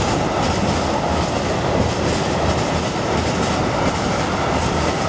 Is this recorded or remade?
recorded